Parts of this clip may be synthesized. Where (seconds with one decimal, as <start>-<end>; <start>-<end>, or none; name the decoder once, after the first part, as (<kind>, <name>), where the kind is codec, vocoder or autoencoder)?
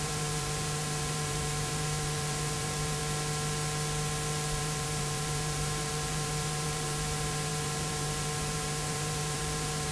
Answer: 0.0-3.0 (vocoder, BigVGAN v2); 4.6-9.9